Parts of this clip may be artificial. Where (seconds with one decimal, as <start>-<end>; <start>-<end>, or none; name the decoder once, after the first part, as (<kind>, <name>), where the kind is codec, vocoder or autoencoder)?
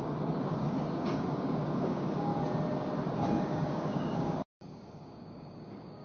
0.0-2.3 (codec, DAC); 3.4-6.0